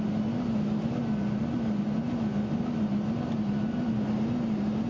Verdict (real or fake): real